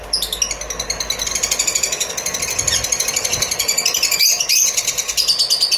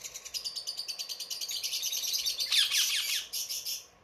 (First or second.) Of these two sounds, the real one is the first